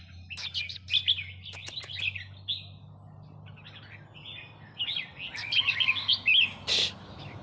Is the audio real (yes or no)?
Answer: yes